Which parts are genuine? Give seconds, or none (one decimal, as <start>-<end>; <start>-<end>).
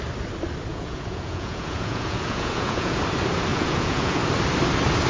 0.0-0.7; 3.0-3.5; 4.2-5.1